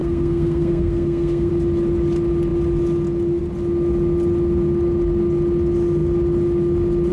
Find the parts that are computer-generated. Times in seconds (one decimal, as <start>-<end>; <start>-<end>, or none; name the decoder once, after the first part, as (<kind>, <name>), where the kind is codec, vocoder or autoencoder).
0.0-1.5 (codec, SNAC)